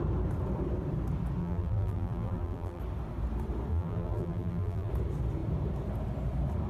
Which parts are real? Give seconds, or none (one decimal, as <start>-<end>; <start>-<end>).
0.0-1.4; 2.8-3.7; 4.9-6.7